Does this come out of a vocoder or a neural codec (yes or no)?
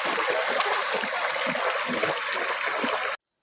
no